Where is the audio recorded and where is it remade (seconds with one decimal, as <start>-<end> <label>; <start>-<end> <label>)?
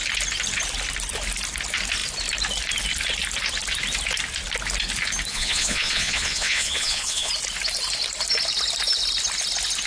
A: 0.0-5.3 recorded; 5.3-7.3 remade; 7.3-9.9 recorded